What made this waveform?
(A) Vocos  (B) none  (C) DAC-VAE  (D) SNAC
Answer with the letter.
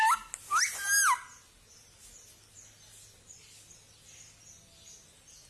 B